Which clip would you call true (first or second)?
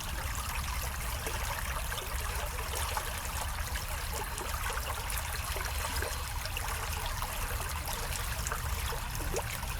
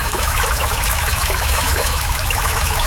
first